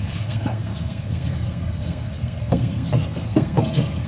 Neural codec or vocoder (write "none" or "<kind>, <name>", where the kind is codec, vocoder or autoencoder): codec, SNAC